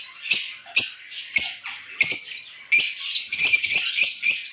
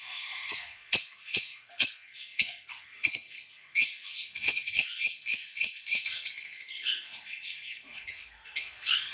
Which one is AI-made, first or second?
second